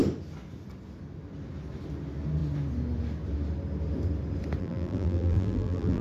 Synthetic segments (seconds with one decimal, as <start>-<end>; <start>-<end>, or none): 4.6-6.0